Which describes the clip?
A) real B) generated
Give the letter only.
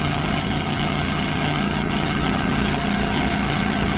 B